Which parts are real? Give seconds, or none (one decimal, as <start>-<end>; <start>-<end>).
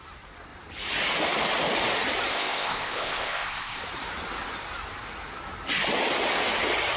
0.0-2.3; 3.8-7.0